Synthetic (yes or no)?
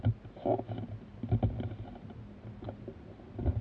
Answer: no